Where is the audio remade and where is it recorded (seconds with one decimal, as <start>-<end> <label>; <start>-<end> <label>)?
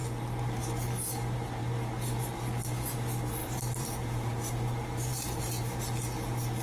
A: 0.0-3.4 recorded; 3.4-5.8 remade; 5.8-6.6 recorded